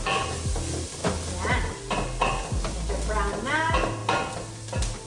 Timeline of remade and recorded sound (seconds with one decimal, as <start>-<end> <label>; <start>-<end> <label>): 0.0-5.1 recorded